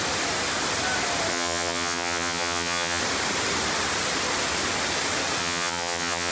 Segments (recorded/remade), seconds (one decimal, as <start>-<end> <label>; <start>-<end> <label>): 0.0-1.3 recorded; 1.3-3.0 remade; 3.0-5.4 recorded; 5.4-6.3 remade